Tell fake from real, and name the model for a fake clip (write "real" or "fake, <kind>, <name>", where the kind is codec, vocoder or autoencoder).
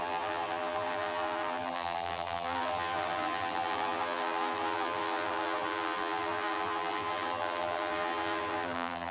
fake, vocoder, BigVGAN v2